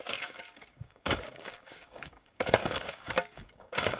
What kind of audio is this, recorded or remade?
remade